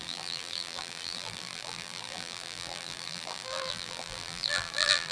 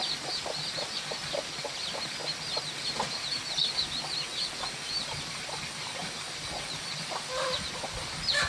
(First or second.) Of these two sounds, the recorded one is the second